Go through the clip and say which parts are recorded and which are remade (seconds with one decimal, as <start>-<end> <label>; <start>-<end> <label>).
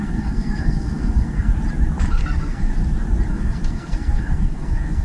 0.0-1.5 remade; 1.5-2.1 recorded; 2.1-2.7 remade; 2.7-3.3 recorded; 3.3-5.0 remade